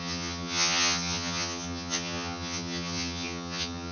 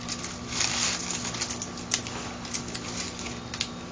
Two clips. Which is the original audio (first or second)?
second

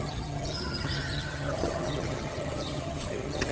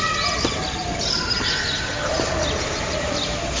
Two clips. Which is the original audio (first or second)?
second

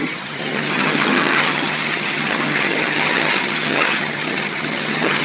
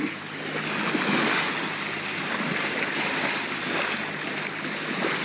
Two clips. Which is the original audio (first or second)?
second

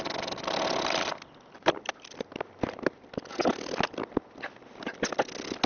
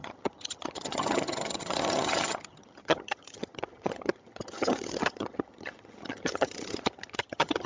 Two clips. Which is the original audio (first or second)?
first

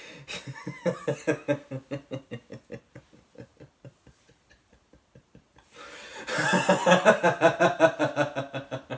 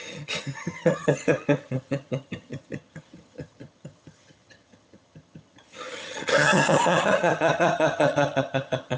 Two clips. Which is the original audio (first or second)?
first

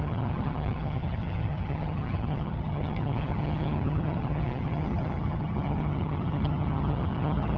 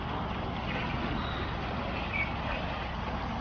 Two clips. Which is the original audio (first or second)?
second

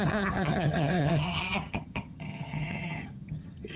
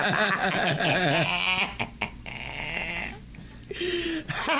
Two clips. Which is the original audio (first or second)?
second